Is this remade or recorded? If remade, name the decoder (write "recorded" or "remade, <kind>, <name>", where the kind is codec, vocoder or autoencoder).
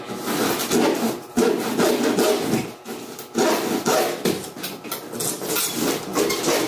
recorded